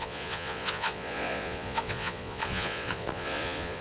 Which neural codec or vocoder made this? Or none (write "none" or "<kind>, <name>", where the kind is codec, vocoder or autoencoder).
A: vocoder, Vocos